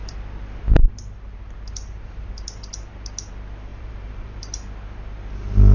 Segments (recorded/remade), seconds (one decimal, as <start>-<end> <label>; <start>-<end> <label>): 0.0-3.7 recorded; 3.7-4.4 remade; 4.4-5.7 recorded